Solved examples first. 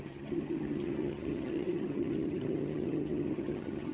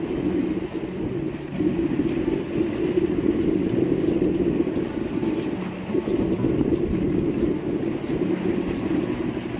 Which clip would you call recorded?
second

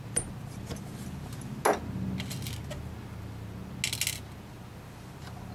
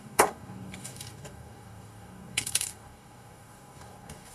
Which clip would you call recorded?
first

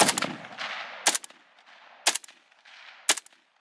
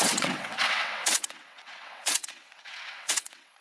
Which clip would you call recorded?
first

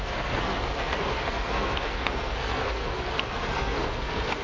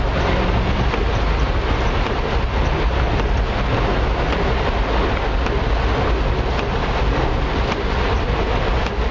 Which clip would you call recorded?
second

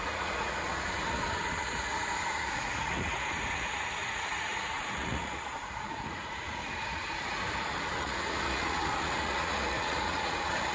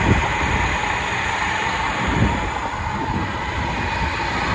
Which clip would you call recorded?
second